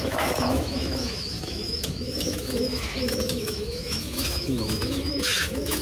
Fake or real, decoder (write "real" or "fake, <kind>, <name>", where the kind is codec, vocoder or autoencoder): fake, autoencoder, DAC-VAE